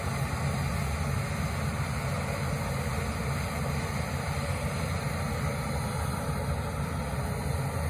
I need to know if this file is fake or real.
real